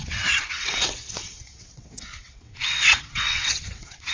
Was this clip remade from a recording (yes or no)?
yes